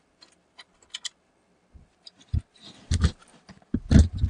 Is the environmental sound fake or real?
real